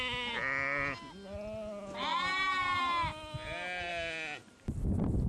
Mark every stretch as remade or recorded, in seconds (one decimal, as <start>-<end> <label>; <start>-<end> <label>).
0.0-2.1 recorded; 2.1-2.8 remade; 2.8-5.3 recorded